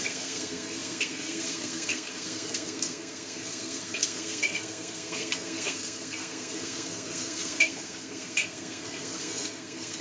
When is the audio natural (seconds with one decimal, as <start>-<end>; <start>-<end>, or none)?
none